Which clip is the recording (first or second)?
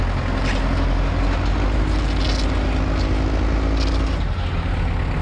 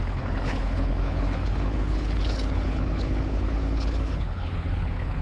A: first